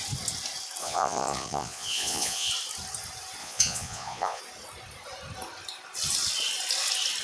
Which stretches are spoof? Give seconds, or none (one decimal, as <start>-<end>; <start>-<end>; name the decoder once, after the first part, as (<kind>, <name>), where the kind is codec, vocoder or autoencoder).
0.8-2.5 (vocoder, Vocos); 3.4-4.4